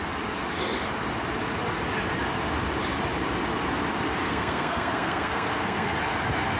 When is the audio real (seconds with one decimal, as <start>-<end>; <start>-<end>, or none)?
0.0-4.2; 6.0-6.6